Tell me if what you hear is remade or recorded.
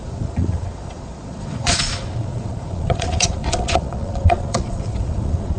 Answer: remade